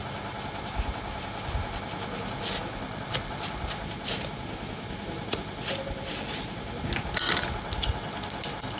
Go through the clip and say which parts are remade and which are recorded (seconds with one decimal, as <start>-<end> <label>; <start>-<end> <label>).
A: 0.0-8.8 recorded